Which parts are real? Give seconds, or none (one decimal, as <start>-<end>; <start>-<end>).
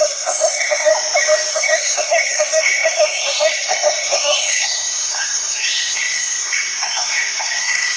0.9-1.5